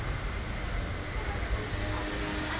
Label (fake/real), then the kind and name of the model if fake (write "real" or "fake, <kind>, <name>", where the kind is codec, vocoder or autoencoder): real